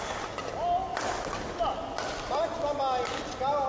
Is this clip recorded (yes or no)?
yes